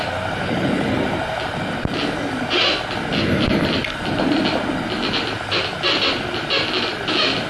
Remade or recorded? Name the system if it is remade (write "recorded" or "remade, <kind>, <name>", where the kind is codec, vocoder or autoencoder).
recorded